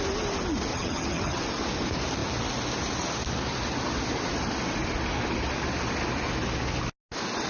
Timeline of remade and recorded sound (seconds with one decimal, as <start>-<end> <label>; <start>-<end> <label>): 0.0-0.7 recorded; 0.7-1.4 remade; 1.4-7.5 recorded

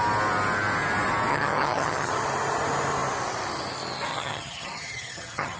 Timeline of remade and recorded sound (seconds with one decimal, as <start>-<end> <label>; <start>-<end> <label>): 0.0-1.3 recorded; 1.3-2.1 remade; 2.1-4.1 recorded; 4.1-5.6 remade

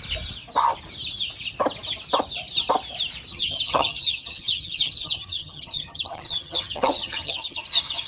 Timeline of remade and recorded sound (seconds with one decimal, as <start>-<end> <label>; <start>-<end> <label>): 0.0-3.3 recorded; 3.3-8.1 remade

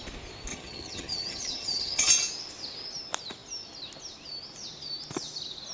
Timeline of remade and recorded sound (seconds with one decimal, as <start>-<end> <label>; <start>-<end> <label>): 0.0-0.5 recorded; 0.5-2.1 remade; 2.1-5.7 recorded